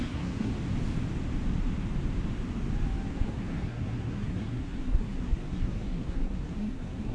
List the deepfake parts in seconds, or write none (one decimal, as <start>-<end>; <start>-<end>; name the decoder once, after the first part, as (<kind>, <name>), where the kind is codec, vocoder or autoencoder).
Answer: 0.0-0.5 (codec, SNAC); 3.1-7.1